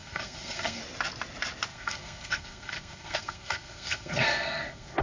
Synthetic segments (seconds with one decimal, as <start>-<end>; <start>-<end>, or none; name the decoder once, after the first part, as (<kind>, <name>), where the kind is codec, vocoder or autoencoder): 0.0-0.8 (codec, SNAC); 1.7-5.0